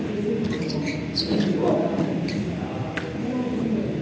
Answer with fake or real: real